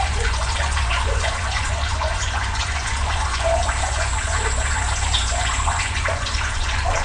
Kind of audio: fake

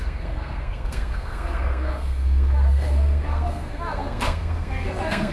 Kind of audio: fake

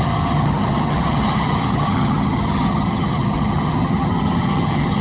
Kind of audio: fake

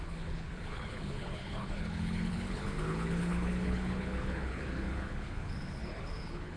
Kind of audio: fake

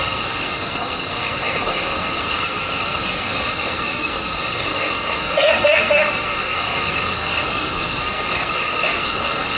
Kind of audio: fake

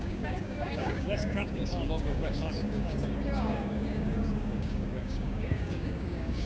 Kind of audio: fake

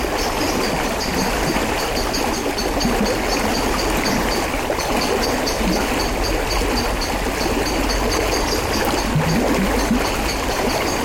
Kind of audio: real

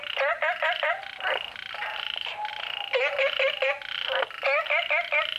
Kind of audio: real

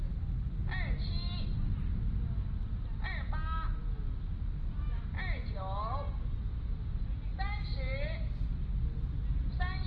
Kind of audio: real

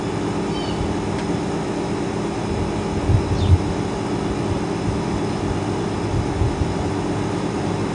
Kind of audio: real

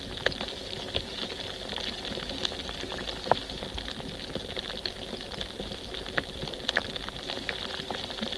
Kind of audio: real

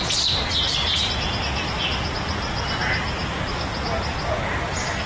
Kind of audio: real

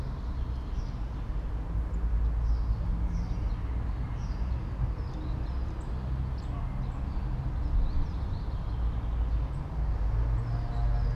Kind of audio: real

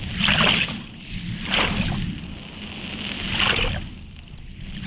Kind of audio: real